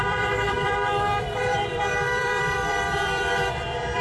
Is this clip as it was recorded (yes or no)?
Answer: no